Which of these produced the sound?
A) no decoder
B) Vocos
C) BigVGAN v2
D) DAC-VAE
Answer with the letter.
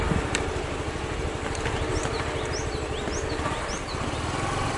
A